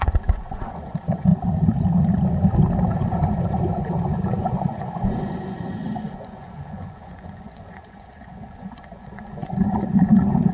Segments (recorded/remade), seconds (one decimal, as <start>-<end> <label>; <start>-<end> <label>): 0.0-1.3 remade; 1.3-2.9 recorded; 2.9-10.5 remade